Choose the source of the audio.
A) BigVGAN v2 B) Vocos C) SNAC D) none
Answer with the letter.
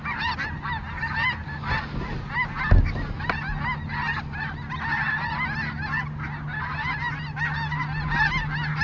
D